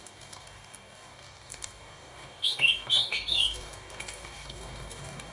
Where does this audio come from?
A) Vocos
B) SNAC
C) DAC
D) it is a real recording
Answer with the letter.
C